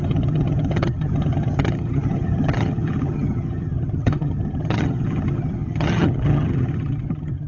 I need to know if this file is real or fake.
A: fake